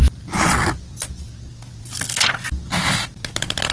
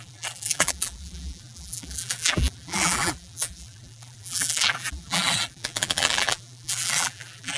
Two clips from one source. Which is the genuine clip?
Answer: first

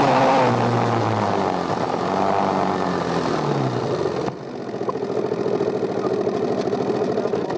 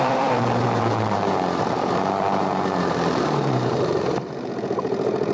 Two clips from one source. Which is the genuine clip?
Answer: first